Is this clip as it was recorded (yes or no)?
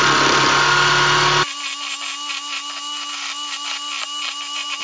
yes